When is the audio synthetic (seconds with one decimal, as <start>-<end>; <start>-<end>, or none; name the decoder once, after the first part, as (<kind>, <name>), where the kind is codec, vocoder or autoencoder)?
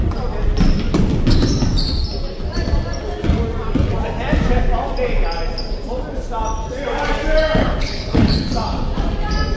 7.6-8.5 (codec, HILCodec)